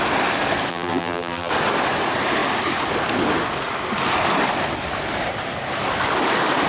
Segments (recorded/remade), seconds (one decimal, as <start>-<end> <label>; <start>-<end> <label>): 0.0-0.7 recorded; 0.7-1.5 remade; 1.5-6.7 recorded